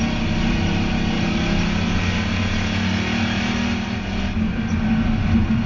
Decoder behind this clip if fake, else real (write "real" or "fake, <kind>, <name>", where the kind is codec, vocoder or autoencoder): real